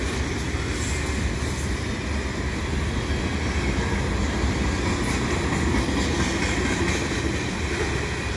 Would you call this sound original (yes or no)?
yes